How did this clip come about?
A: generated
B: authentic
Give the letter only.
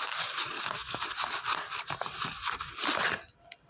B